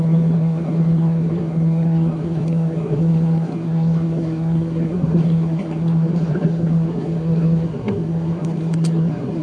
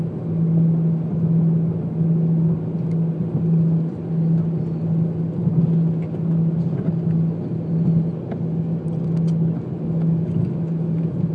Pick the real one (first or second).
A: second